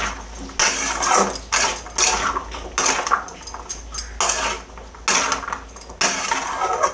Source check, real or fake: real